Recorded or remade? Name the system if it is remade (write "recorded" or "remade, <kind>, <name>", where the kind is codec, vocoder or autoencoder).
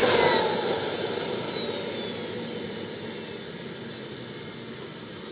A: recorded